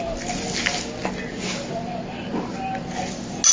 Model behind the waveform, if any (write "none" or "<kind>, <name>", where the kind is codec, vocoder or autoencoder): none